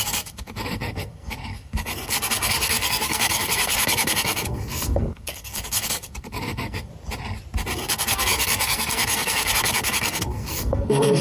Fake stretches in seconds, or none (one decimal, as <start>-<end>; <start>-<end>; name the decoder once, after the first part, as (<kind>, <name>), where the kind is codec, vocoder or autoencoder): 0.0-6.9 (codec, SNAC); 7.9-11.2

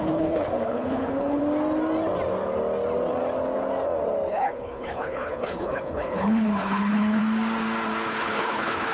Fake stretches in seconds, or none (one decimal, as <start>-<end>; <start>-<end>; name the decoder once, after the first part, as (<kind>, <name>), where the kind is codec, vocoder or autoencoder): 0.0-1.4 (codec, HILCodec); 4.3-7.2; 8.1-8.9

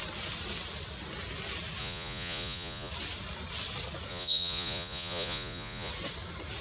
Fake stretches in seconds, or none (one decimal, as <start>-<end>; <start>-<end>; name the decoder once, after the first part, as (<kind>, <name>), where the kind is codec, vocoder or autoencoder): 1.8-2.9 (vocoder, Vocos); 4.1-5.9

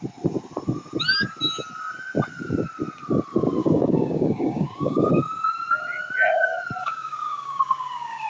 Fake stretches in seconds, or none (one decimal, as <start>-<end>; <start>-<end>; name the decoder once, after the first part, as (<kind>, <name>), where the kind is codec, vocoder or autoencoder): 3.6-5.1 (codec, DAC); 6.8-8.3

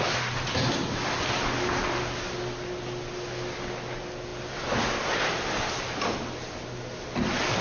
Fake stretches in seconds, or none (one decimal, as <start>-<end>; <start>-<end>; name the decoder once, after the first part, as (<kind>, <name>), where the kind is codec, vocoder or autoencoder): none

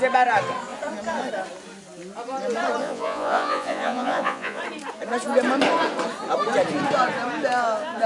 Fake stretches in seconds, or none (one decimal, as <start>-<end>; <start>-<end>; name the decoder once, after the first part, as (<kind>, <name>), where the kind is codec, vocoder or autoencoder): 2.8-4.6 (vocoder, Vocos)